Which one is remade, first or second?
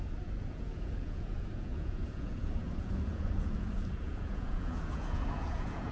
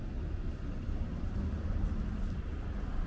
first